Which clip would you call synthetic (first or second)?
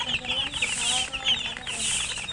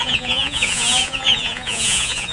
second